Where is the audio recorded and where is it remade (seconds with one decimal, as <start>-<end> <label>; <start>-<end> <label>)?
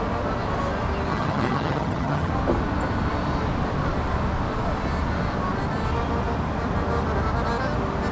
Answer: 0.0-1.1 recorded; 1.1-2.3 remade; 2.3-8.1 recorded